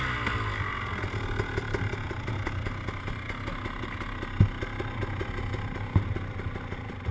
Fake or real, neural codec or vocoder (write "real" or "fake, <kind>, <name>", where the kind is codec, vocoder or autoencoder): real